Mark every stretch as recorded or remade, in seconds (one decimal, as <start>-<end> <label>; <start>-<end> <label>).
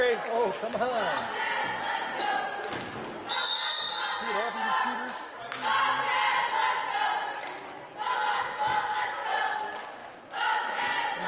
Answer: 0.0-10.0 recorded; 10.0-10.8 remade; 10.8-11.3 recorded